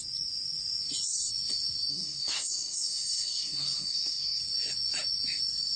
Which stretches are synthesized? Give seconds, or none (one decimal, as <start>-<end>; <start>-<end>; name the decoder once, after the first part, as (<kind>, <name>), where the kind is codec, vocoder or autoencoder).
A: 1.9-4.4 (codec, SNAC)